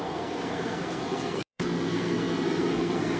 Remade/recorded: remade